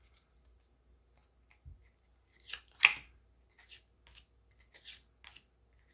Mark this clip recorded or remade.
recorded